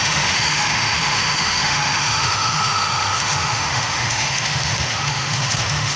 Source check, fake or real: fake